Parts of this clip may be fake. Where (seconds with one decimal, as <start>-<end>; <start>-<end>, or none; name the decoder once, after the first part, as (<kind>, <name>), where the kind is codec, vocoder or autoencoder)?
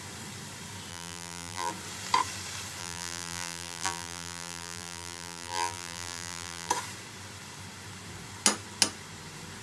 0.9-1.7 (vocoder, BigVGAN v2); 2.8-6.7